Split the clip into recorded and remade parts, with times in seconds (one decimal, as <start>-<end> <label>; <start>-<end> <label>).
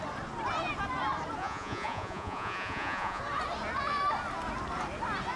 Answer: 0.0-1.4 recorded; 1.4-3.2 remade; 3.2-5.4 recorded